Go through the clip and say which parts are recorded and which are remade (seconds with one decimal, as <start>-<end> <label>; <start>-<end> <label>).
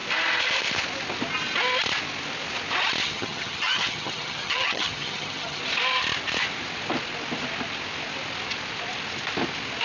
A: 0.0-3.0 recorded; 3.0-5.6 remade; 5.6-9.8 recorded